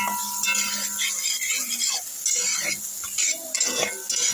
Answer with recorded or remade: recorded